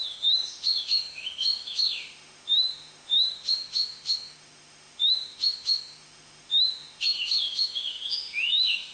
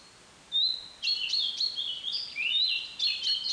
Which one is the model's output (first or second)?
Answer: first